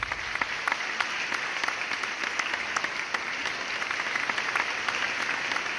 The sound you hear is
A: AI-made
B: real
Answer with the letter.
B